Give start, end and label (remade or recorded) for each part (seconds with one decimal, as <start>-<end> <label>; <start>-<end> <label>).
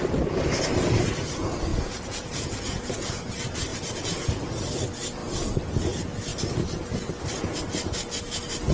0.0-1.7 recorded; 1.7-2.9 remade; 2.9-3.7 recorded; 3.7-4.4 remade; 4.4-8.7 recorded